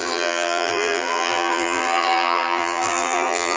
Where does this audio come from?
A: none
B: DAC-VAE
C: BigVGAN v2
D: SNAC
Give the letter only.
C